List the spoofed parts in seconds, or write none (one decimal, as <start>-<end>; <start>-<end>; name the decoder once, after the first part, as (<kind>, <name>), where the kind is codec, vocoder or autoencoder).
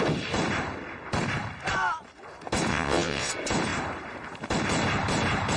2.7-3.3 (vocoder, WaveNeXt)